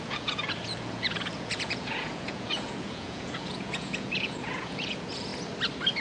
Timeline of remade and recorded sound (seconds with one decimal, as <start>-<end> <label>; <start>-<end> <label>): 0.0-5.3 remade; 5.3-6.0 recorded